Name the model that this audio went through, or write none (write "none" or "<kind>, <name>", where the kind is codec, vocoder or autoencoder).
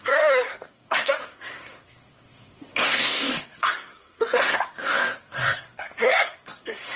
codec, SNAC